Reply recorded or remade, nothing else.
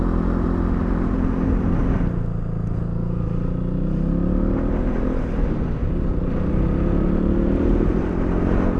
recorded